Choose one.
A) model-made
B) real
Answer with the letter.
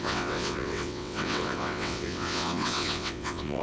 A